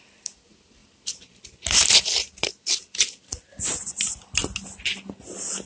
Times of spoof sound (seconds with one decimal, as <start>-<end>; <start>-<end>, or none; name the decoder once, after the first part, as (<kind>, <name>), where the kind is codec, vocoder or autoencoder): none

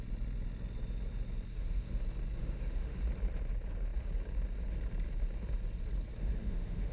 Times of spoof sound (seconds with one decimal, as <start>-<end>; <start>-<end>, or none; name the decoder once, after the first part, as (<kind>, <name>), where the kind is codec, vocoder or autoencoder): 1.5-2.0 (autoencoder, DAC-VAE); 2.4-3.0; 6.2-6.9

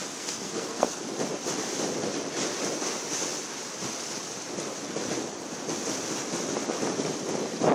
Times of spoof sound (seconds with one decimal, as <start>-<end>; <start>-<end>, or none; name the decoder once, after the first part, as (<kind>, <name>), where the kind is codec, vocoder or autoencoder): 0.0-1.0 (codec, SNAC)

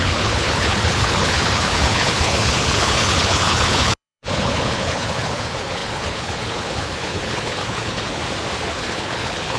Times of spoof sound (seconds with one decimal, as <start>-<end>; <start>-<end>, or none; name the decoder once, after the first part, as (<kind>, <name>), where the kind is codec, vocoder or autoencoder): 0.0-8.2 (codec, HILCodec); 8.7-9.6

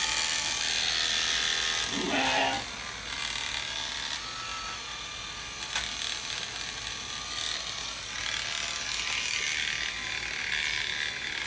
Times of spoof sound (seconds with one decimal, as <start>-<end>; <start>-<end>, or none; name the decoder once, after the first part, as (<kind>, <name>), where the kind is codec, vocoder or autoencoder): none

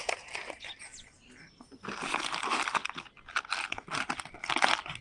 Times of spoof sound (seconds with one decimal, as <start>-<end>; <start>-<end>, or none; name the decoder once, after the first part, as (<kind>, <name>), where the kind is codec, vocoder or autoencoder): none

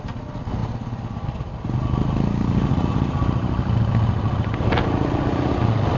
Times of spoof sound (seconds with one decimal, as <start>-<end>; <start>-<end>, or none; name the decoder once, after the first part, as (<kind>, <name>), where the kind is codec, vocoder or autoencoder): none